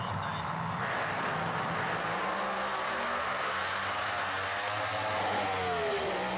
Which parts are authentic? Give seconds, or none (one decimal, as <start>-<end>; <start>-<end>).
0.0-6.4